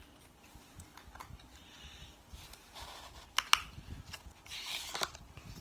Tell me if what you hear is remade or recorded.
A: recorded